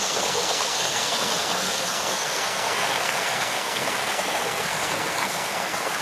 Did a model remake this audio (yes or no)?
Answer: yes